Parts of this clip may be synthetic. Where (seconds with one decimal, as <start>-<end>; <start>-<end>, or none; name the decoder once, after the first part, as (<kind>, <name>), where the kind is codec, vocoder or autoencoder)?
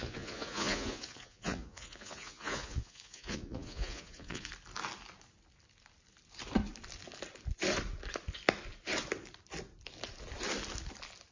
0.0-4.5 (vocoder, Vocos)